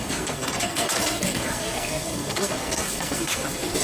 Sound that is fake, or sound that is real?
fake